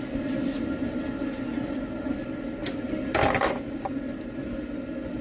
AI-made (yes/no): no